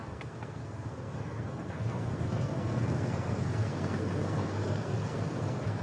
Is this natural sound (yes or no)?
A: no